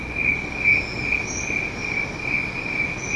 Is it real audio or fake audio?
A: real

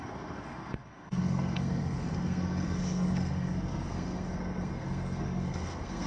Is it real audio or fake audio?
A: fake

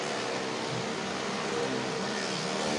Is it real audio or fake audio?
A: real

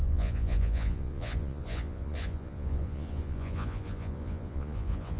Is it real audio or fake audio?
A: fake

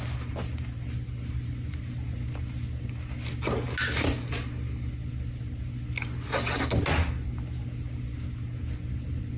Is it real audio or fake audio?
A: real